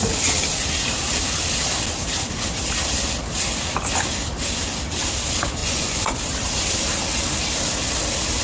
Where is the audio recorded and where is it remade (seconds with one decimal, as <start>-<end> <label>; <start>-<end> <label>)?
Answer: 0.0-5.6 recorded; 5.6-6.2 remade; 6.2-8.4 recorded